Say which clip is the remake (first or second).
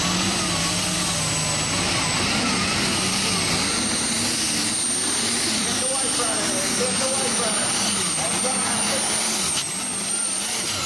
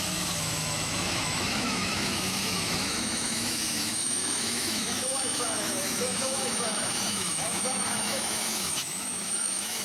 second